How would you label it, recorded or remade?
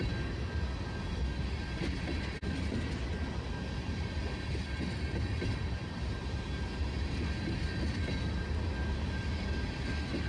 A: recorded